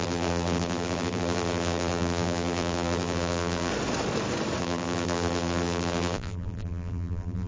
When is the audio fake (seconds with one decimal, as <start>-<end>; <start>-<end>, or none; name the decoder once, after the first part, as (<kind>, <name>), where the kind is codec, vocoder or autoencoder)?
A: 0.0-3.7 (vocoder, BigVGAN v2); 4.6-7.5